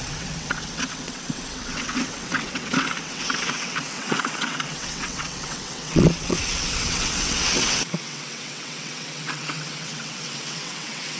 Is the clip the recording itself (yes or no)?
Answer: no